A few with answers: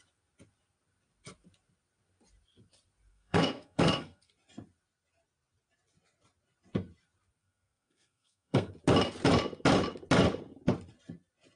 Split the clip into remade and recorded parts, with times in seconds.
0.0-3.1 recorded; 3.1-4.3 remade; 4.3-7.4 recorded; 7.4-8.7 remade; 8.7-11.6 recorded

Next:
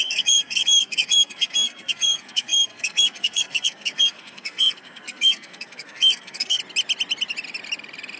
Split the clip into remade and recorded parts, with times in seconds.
0.0-6.6 remade; 6.6-8.2 recorded

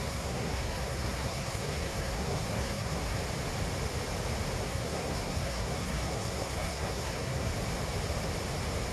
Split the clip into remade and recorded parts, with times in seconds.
0.0-3.2 remade; 3.2-4.6 recorded; 4.6-7.5 remade; 7.5-8.9 recorded